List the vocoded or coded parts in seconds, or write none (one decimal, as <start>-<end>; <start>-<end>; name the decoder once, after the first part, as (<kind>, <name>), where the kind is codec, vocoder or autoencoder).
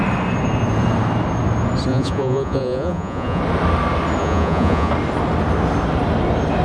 1.9-3.4 (vocoder, Vocos); 4.2-4.9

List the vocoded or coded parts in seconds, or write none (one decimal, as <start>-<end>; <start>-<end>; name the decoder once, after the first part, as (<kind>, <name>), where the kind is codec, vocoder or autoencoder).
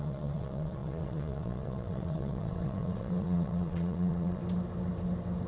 0.0-4.4 (vocoder, WaveNeXt)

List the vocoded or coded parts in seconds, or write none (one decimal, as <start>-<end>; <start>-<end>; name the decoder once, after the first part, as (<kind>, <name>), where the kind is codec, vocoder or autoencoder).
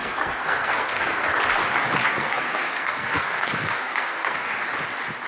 0.0-1.3 (codec, SNAC); 2.0-4.5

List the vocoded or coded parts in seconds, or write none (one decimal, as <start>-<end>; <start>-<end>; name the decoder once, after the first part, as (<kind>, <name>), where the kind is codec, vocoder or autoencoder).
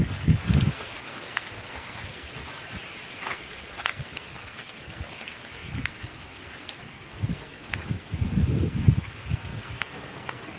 0.0-2.4 (codec, SNAC); 3.1-10.6